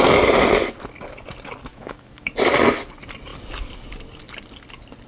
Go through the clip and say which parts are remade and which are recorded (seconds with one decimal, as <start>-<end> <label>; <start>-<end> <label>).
0.0-1.7 recorded; 1.7-2.3 remade; 2.3-5.1 recorded